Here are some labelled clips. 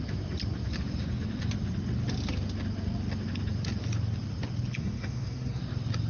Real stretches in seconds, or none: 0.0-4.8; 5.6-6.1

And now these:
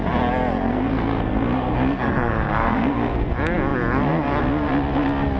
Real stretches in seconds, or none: 0.0-0.7; 3.3-5.4

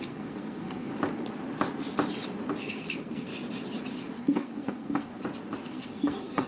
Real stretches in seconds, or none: 0.9-2.6; 3.3-4.2; 5.1-5.7

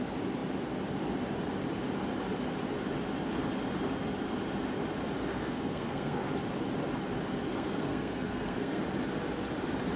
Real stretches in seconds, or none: 0.0-5.3; 6.3-7.5; 8.8-10.0

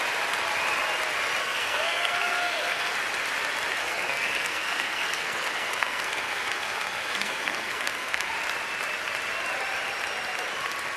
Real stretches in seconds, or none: 0.0-1.4; 2.9-3.8; 8.3-11.0

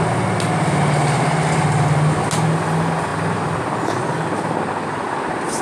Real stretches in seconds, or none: 0.0-5.6